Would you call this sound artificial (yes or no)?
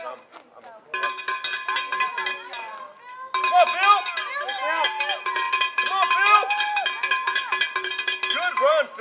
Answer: no